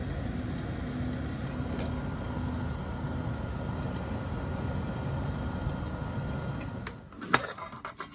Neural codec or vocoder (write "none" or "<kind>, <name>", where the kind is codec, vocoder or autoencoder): none